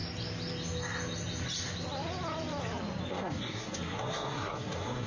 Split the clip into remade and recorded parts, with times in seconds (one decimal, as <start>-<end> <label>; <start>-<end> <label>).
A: 0.0-3.1 recorded; 3.1-5.1 remade